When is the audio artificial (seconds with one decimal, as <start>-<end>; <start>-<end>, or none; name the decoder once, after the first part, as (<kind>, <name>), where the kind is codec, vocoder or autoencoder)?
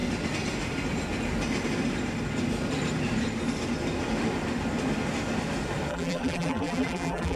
5.9-7.4 (vocoder, BigVGAN v2)